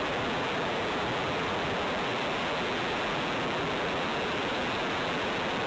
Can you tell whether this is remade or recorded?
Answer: remade